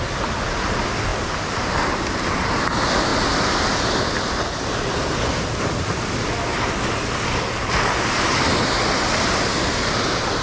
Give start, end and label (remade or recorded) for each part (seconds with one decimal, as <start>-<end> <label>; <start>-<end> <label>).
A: 0.0-10.4 recorded